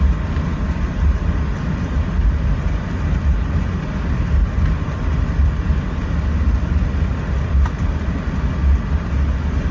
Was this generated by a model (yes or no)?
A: no